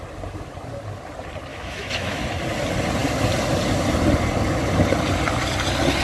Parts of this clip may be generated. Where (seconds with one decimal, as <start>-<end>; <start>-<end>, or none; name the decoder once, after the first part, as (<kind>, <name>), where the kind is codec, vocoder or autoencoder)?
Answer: 1.5-2.2 (autoencoder, DAC-VAE)